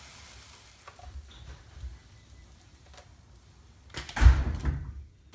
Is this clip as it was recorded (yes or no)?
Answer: yes